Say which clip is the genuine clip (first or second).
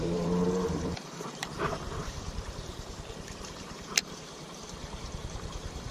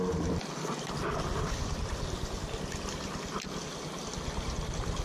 second